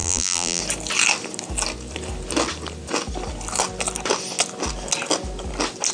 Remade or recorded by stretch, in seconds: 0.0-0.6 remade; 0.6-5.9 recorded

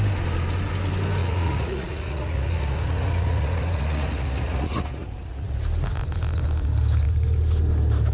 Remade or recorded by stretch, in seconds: 0.0-1.2 recorded; 1.2-5.5 remade; 5.5-8.1 recorded

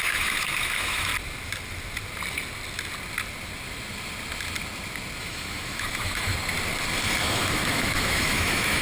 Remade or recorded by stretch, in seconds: 0.0-1.1 remade; 1.1-5.2 recorded; 5.2-6.3 remade; 6.3-7.2 recorded; 7.2-8.8 remade

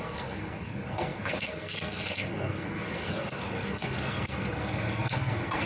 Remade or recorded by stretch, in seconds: 0.0-5.7 remade

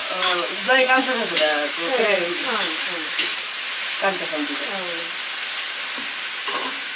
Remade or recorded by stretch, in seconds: 0.0-3.3 remade; 3.3-6.5 recorded; 6.5-7.0 remade